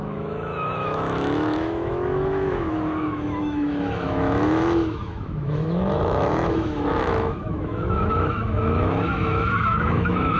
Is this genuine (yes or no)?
no